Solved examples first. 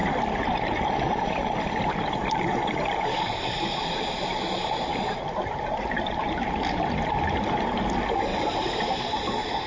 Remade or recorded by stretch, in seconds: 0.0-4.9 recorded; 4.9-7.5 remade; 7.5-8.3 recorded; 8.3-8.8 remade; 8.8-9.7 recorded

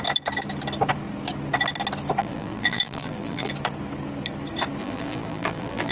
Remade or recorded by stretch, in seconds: 0.0-2.2 recorded; 2.2-3.5 remade; 3.5-4.8 recorded; 4.8-5.9 remade

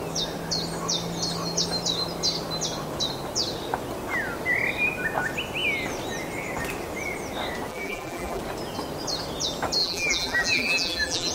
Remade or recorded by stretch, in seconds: 0.0-7.7 recorded; 7.7-8.4 remade; 8.4-9.8 recorded; 9.8-11.3 remade

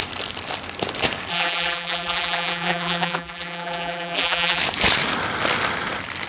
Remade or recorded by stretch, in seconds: 0.0-1.3 recorded; 1.3-4.6 remade; 4.6-6.3 recorded

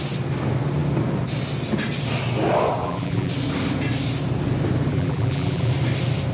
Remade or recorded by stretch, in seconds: 0.0-2.8 recorded; 2.8-3.3 remade; 3.3-4.9 recorded; 4.9-5.7 remade; 5.7-6.3 recorded

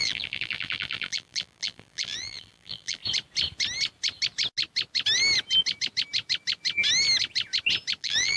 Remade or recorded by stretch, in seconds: 0.0-3.0 remade; 3.0-8.0 recorded; 8.0-8.4 remade

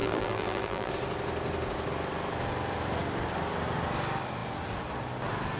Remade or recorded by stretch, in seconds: 0.0-0.9 remade; 0.9-5.6 recorded

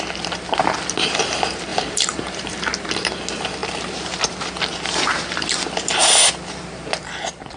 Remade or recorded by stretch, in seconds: 0.0-1.7 recorded; 1.7-2.9 remade; 2.9-3.6 recorded; 3.6-4.2 remade; 4.2-7.6 recorded